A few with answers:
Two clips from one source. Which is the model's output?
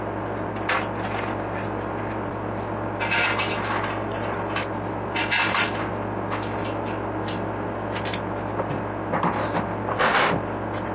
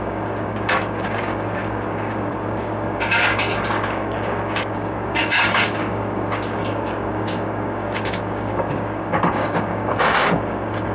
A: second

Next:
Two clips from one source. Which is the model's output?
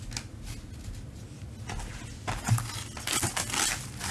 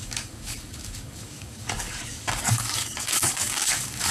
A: second